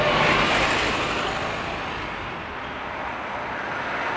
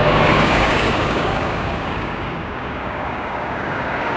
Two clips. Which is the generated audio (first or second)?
second